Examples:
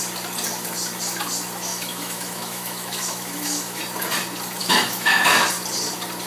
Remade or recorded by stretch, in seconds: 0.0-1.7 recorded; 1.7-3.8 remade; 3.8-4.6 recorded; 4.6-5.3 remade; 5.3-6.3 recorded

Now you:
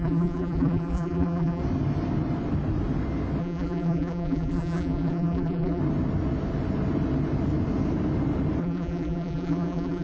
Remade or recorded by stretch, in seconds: 0.0-1.6 remade; 1.6-3.4 recorded; 3.4-5.8 remade; 5.8-8.6 recorded; 8.6-10.0 remade

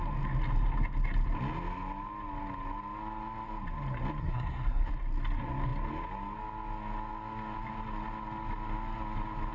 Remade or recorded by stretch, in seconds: 0.0-4.2 recorded; 4.2-4.9 remade; 4.9-9.5 recorded

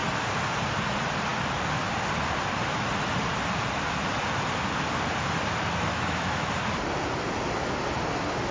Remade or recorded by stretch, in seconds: 0.0-5.9 recorded; 5.9-6.5 remade; 6.5-8.5 recorded

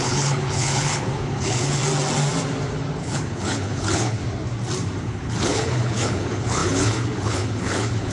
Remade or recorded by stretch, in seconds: 0.0-1.8 remade; 1.8-3.0 recorded; 3.0-4.2 remade; 4.2-5.0 recorded; 5.0-8.1 remade

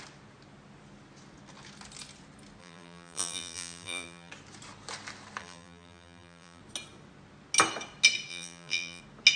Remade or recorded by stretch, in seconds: 0.0-2.6 recorded; 2.6-4.3 remade; 4.3-5.4 recorded; 5.4-6.6 remade; 6.6-8.3 recorded; 8.3-9.0 remade; 9.0-9.4 recorded